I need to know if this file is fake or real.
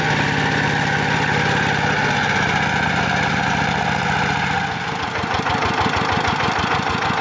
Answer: real